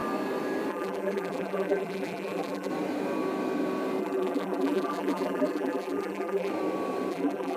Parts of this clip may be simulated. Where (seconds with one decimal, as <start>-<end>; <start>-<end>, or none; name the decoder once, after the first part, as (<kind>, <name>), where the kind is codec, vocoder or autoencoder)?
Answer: 0.7-2.7 (vocoder, BigVGAN v2); 4.0-6.5; 7.1-7.6